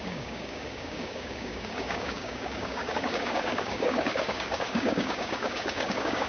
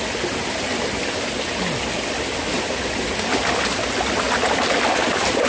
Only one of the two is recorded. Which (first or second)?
second